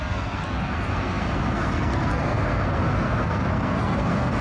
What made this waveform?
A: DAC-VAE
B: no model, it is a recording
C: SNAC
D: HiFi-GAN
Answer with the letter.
C